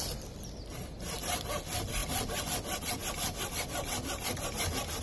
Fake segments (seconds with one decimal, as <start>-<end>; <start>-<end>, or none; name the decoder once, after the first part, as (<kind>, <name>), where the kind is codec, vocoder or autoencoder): none